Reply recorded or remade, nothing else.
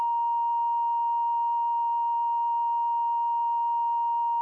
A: recorded